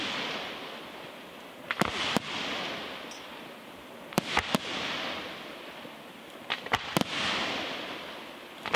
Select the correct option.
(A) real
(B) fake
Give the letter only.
A